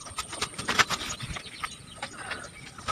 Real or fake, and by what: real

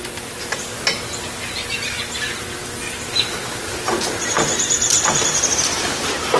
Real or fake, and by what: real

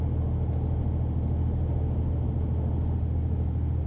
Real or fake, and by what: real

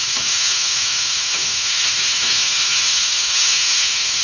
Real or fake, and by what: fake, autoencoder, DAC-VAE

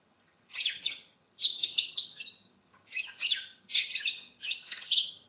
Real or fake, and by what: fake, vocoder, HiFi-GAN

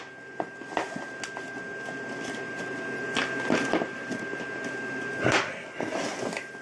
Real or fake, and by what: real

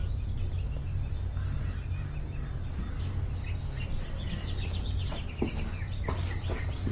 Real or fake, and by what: real